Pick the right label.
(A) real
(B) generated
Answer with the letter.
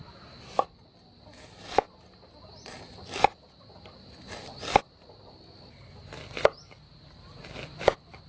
A